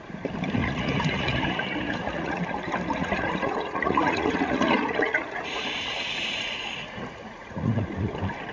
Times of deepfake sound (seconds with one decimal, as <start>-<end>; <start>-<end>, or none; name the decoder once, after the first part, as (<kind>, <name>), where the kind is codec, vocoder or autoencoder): 0.6-2.4 (vocoder, Vocos); 3.0-7.8